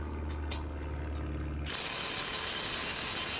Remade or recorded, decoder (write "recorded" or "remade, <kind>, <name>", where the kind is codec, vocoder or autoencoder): recorded